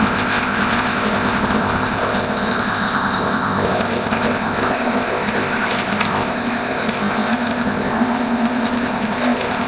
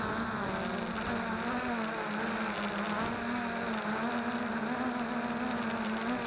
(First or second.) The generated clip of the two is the first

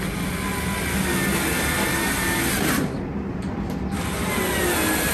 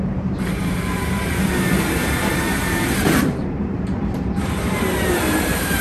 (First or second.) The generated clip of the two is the second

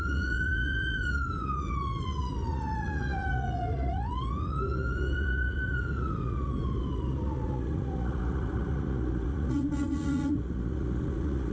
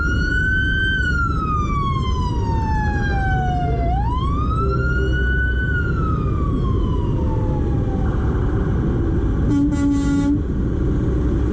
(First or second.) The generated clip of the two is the first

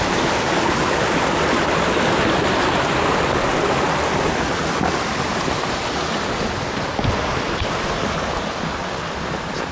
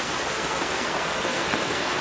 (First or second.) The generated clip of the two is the second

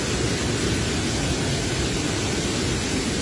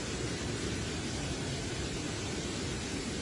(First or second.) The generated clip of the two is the second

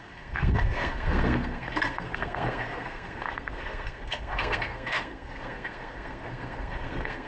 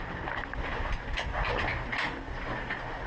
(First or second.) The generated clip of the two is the first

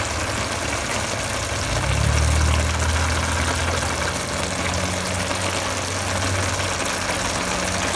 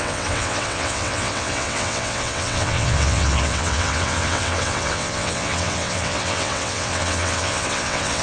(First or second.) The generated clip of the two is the second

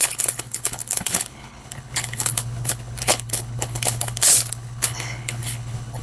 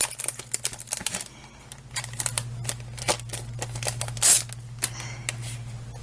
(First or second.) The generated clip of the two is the first